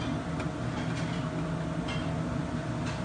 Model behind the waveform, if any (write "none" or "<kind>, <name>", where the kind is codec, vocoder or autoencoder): none